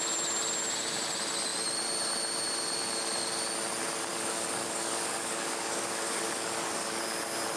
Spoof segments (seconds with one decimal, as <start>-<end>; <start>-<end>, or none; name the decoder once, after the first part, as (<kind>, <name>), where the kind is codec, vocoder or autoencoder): 4.1-7.0 (codec, DAC)